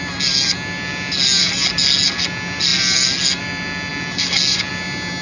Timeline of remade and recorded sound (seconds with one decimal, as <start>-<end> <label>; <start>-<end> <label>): 0.0-5.2 recorded